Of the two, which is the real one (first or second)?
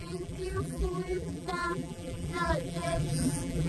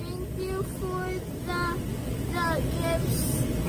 second